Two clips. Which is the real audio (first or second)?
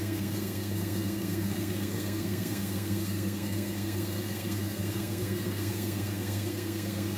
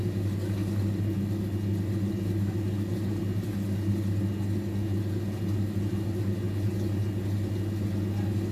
second